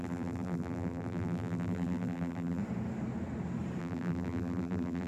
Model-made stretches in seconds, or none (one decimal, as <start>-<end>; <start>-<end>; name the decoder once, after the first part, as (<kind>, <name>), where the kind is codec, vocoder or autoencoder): 0.0-2.6 (vocoder, BigVGAN v2); 3.8-5.1